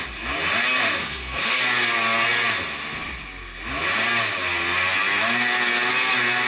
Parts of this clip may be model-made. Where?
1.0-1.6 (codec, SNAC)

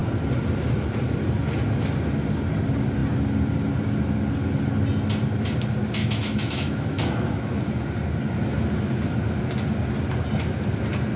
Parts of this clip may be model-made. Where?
6.0-7.6 (autoencoder, DAC-VAE)